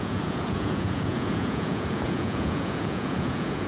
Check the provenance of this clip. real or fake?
fake